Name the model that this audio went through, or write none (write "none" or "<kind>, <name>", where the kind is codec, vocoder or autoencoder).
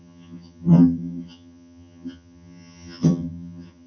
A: vocoder, HiFi-GAN